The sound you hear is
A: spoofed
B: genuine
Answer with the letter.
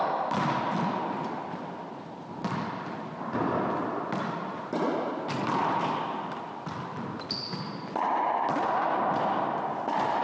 B